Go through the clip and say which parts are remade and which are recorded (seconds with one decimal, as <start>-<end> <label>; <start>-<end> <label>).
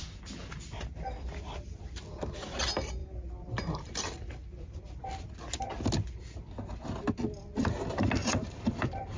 0.0-8.2 recorded; 8.2-9.2 remade